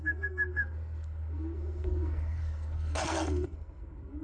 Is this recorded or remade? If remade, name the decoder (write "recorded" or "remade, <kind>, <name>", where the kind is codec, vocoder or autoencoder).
remade, codec, SNAC